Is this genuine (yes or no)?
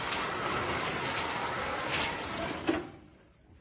yes